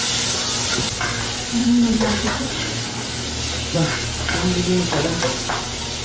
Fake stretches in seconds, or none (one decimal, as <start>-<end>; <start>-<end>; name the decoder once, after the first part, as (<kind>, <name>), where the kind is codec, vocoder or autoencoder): 1.6-2.5 (vocoder, Vocos)